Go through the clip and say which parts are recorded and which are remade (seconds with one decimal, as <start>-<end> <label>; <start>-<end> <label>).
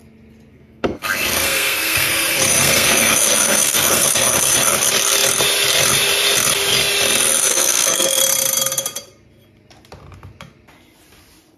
0.0-0.5 recorded; 0.5-4.6 remade; 4.6-7.4 recorded; 7.4-8.2 remade; 8.2-11.6 recorded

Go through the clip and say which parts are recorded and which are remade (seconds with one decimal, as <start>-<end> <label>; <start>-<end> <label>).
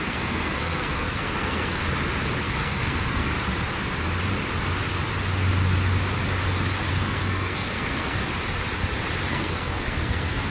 0.0-1.8 remade; 1.8-2.4 recorded; 2.4-3.3 remade; 3.3-6.9 recorded; 6.9-8.2 remade; 8.2-9.3 recorded; 9.3-10.5 remade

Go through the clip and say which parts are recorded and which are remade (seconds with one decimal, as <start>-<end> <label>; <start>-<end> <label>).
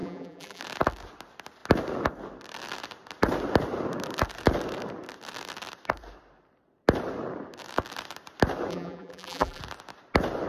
0.0-0.6 remade; 0.6-8.7 recorded; 8.7-9.6 remade; 9.6-10.5 recorded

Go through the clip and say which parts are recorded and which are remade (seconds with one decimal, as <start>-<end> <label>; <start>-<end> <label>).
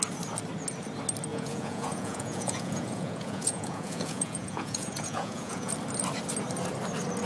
0.0-1.3 recorded; 1.3-5.7 remade; 5.7-7.3 recorded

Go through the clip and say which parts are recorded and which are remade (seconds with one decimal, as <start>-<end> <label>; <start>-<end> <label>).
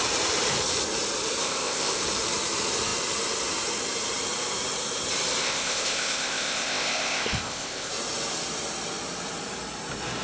0.0-1.4 recorded; 1.4-2.0 remade; 2.0-5.4 recorded; 5.4-7.9 remade; 7.9-10.2 recorded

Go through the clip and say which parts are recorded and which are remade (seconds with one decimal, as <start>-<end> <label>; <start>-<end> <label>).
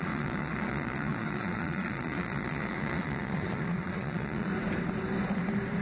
0.0-4.5 remade; 4.5-5.8 recorded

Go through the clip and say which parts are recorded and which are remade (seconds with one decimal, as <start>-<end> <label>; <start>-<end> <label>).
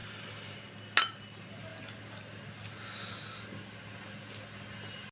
0.0-5.1 recorded